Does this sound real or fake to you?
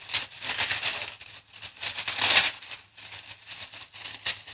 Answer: real